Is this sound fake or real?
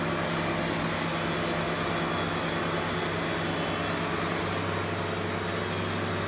real